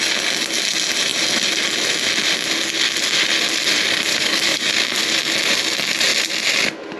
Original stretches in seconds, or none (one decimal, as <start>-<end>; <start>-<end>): 0.0-4.1; 4.7-7.0